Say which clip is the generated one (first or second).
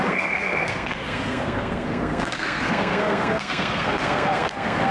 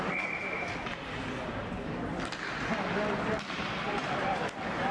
first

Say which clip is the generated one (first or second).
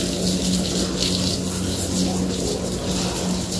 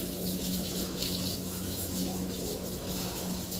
second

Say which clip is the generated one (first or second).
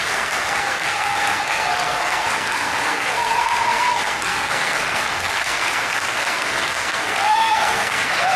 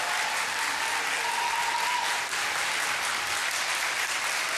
first